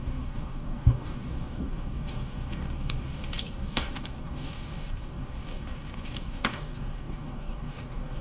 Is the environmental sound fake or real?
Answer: fake